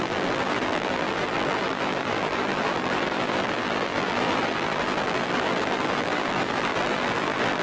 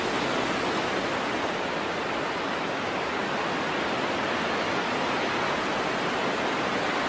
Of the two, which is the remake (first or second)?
first